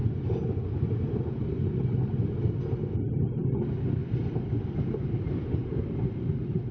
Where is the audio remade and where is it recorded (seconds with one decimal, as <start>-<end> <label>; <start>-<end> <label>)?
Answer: 0.0-6.7 recorded